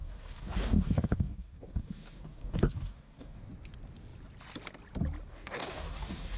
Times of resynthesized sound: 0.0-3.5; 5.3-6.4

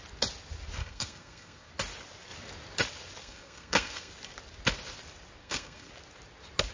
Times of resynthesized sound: 0.8-1.7; 3.2-4.1; 5.4-5.9

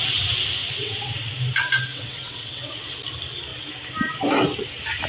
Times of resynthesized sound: 0.6-1.3; 1.9-2.7

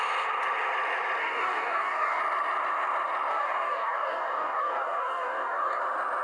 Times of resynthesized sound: 1.2-2.2; 3.3-5.8

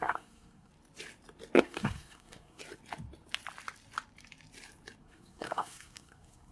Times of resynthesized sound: 0.0-0.7; 1.6-2.6; 5.0-6.5

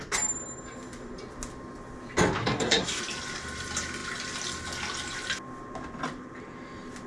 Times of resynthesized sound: 2.4-3.0

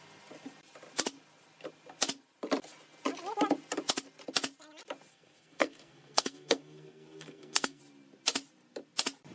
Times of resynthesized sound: 5.1-7.8

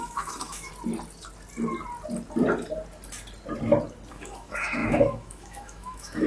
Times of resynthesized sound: 0.0-0.7; 4.1-6.3